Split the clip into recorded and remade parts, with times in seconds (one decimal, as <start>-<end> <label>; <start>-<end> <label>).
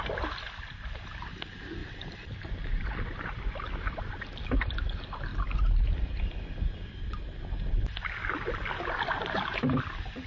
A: 0.0-1.8 recorded; 1.8-4.1 remade; 4.1-10.3 recorded